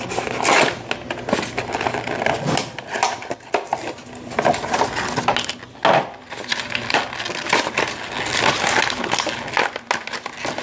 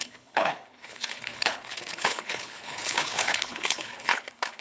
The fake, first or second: second